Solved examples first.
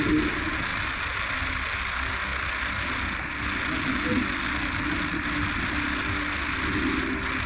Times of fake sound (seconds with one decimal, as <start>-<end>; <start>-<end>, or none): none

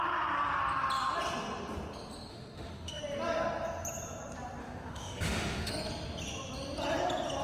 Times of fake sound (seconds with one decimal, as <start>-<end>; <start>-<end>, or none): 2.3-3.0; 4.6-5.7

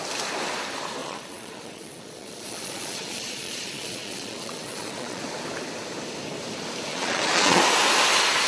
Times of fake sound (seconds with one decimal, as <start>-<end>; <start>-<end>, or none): 1.0-5.2; 6.9-7.6

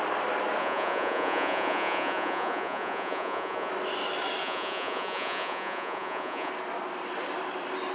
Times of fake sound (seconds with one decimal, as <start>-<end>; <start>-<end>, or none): 0.6-3.7; 4.4-6.5